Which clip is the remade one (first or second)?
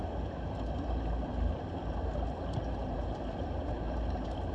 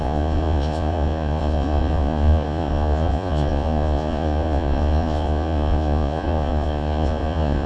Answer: second